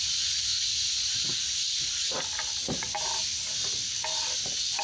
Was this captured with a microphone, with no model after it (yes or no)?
yes